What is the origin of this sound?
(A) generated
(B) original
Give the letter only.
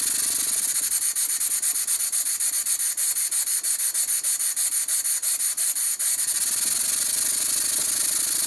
B